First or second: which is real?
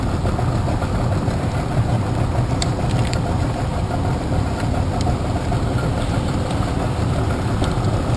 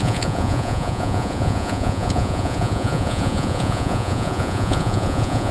first